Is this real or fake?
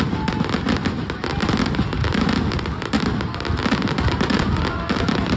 real